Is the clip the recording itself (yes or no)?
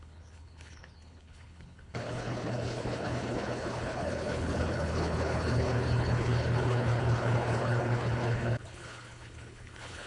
no